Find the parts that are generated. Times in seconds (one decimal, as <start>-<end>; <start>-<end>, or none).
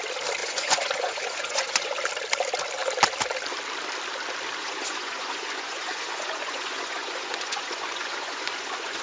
0.4-1.9; 4.6-9.0